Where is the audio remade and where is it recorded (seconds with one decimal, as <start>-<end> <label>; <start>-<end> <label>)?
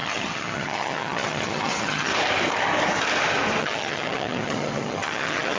0.0-2.1 remade; 2.1-3.6 recorded; 3.6-5.6 remade